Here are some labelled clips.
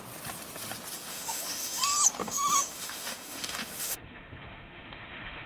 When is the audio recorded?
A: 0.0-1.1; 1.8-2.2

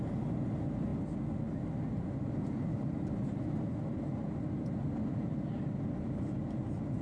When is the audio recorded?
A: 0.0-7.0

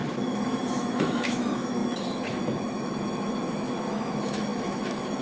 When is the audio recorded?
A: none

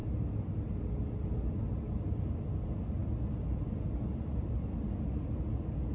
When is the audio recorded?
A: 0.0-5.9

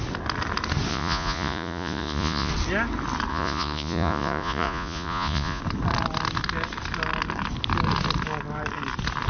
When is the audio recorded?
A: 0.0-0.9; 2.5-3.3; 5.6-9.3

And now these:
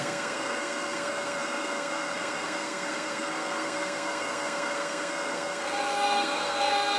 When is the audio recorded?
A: none

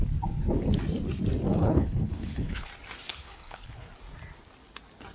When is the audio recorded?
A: 0.0-1.5; 2.7-3.1; 3.9-5.1

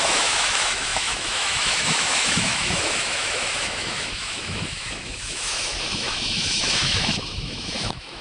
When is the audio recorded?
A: none